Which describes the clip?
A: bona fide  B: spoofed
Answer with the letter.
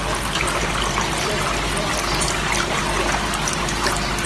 A